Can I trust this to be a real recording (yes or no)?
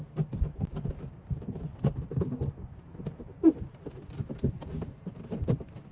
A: yes